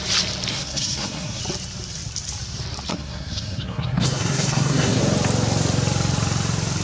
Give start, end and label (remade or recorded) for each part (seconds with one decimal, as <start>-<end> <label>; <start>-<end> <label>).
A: 0.0-0.5 recorded; 0.5-1.4 remade; 1.4-2.9 recorded; 2.9-5.0 remade; 5.0-6.8 recorded